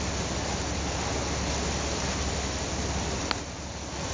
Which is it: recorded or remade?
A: recorded